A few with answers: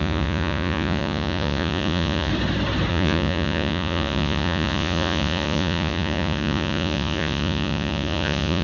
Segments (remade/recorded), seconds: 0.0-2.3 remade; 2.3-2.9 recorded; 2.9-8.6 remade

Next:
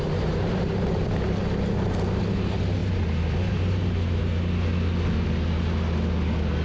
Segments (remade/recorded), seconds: 0.0-6.6 recorded

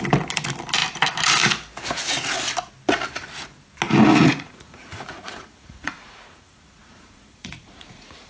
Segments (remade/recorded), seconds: 0.0-4.1 recorded; 4.1-8.3 remade

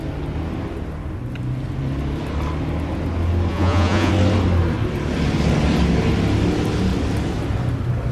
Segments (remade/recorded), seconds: 0.0-3.5 recorded; 3.5-4.1 remade; 4.1-8.1 recorded

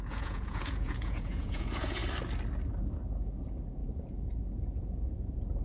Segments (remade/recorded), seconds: 0.0-2.0 remade; 2.0-3.4 recorded; 3.4-5.6 remade